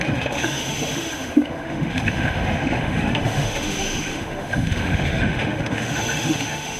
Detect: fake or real fake